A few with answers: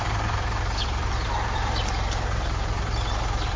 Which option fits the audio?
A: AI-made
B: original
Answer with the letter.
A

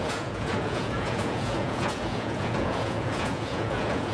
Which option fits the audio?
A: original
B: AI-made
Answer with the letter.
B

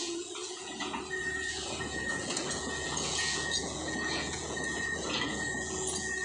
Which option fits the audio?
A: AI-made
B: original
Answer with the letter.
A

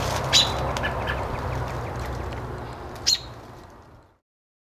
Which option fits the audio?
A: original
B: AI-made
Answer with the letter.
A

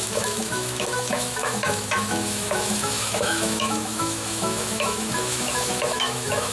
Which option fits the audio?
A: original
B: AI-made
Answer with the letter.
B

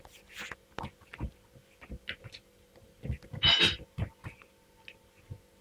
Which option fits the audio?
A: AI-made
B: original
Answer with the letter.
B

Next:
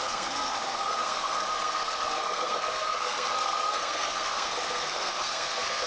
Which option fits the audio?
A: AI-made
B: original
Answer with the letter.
A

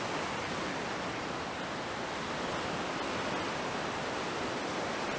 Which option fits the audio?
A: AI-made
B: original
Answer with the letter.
B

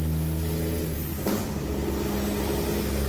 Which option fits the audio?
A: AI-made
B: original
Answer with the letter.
B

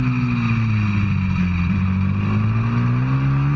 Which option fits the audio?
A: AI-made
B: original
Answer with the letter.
B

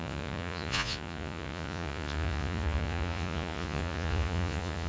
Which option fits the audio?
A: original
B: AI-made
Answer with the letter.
B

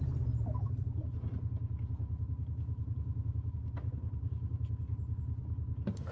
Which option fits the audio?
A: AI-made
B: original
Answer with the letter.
B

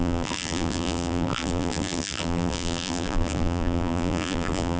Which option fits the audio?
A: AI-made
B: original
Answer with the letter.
A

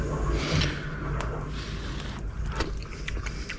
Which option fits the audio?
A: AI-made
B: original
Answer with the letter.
B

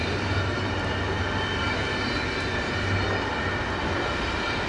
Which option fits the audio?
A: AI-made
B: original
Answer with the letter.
B